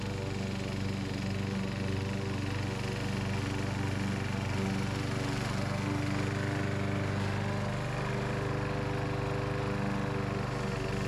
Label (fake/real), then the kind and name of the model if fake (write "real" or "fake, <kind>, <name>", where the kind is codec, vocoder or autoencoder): real